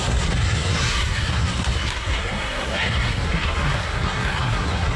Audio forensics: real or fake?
fake